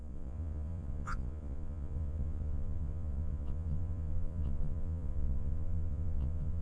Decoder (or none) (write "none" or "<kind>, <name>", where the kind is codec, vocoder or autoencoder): vocoder, Vocos